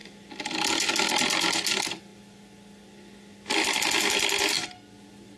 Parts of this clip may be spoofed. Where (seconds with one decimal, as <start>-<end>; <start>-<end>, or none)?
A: none